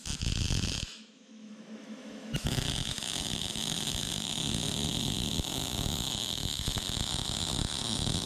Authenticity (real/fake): fake